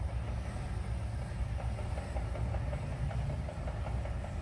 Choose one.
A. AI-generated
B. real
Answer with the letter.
B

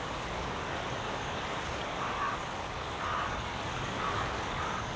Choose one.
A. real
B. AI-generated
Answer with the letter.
B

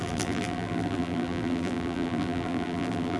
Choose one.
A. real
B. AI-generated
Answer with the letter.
B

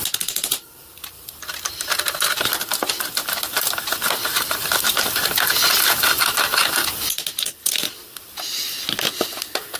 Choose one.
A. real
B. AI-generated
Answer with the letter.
A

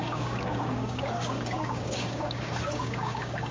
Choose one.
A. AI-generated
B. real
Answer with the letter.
A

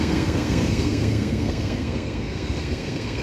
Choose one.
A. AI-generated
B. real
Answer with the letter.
A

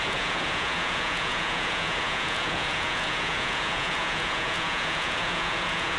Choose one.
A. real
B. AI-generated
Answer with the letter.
B